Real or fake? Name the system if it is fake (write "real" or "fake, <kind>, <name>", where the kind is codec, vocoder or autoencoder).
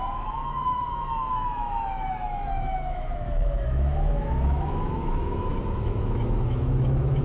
fake, autoencoder, DAC-VAE